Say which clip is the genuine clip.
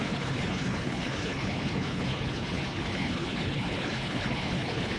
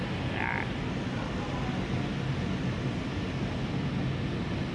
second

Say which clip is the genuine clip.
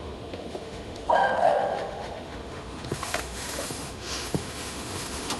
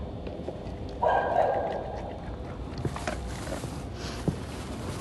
second